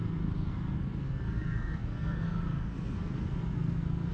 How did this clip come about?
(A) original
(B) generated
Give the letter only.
B